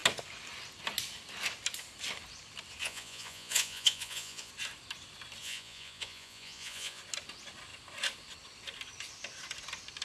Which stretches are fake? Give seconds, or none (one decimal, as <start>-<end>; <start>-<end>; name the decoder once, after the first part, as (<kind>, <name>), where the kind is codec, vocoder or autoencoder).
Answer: 2.8-4.5 (vocoder, Vocos); 5.4-7.0